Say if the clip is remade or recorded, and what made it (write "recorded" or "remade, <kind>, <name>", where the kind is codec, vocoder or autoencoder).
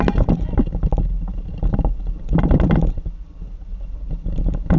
recorded